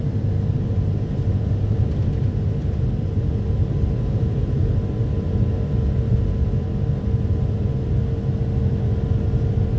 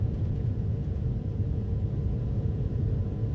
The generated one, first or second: second